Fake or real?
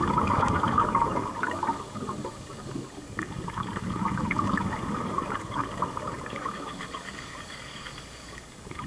fake